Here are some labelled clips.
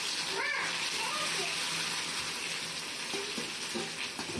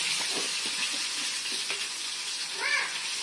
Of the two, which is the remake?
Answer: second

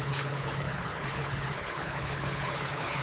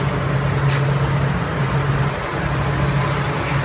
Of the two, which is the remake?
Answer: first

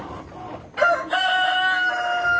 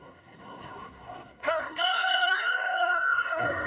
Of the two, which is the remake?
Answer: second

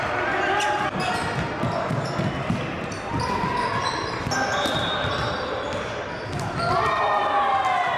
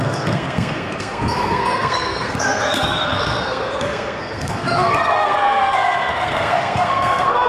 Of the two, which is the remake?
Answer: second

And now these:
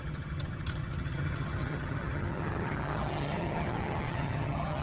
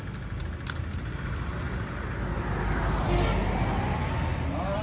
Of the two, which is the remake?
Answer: first